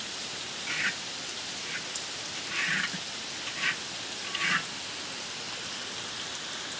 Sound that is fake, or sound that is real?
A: real